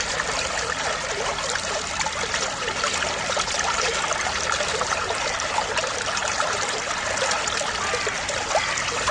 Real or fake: real